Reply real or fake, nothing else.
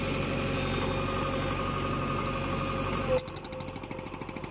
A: real